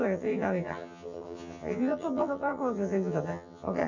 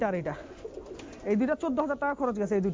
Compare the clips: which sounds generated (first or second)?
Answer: first